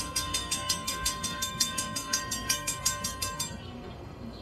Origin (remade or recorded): remade